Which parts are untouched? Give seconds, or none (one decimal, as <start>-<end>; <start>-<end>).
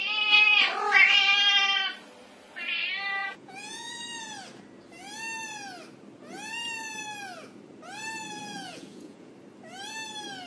0.0-3.2; 4.0-8.4; 9.3-10.5